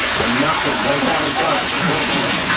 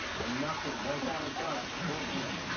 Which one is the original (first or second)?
second